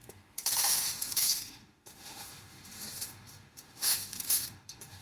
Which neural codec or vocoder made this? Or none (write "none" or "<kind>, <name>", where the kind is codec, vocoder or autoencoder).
autoencoder, DAC-VAE